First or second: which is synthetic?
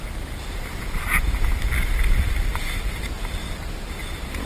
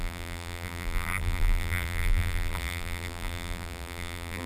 second